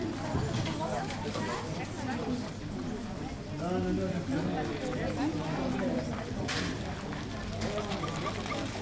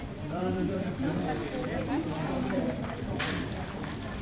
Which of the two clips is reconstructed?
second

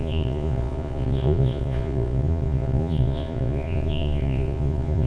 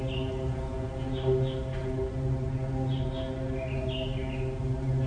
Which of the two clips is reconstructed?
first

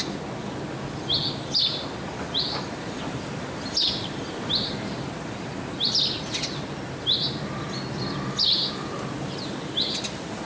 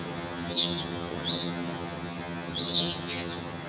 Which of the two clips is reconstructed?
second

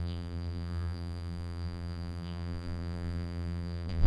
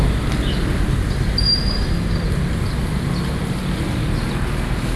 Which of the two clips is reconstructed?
first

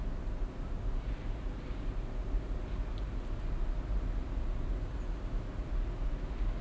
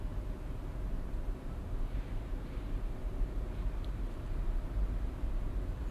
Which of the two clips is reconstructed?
second